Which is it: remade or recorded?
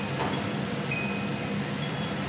recorded